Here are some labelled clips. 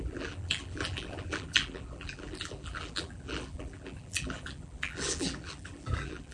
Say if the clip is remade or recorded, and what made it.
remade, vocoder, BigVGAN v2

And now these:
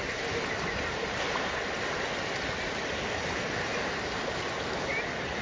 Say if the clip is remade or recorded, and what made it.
recorded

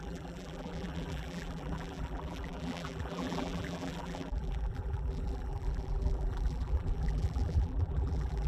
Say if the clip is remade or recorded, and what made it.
remade, vocoder, BigVGAN v2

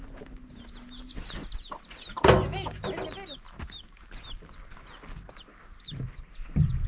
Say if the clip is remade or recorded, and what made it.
recorded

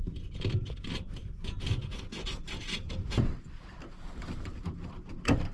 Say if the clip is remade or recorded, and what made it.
remade, vocoder, BigVGAN v2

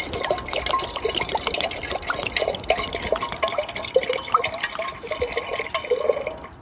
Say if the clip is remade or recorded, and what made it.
recorded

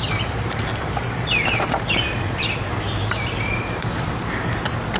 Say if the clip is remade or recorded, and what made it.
remade, vocoder, BigVGAN v2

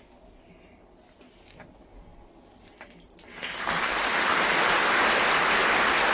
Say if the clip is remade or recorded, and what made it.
recorded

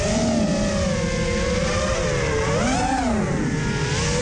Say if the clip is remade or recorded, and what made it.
recorded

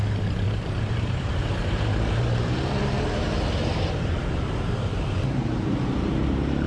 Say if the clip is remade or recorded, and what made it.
remade, vocoder, BigVGAN v2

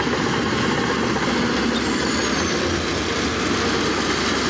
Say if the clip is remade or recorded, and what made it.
recorded